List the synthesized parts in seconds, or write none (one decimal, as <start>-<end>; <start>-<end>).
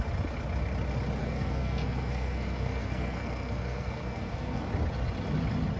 1.2-4.7